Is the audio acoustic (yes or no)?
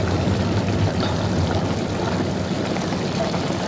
no